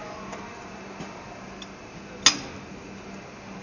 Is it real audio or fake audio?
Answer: real